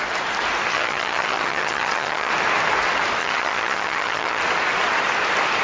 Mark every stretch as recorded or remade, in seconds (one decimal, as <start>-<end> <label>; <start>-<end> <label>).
0.0-0.7 recorded; 0.7-2.3 remade; 2.3-3.2 recorded; 3.2-4.4 remade; 4.4-5.6 recorded